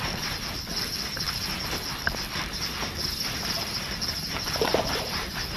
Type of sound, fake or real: fake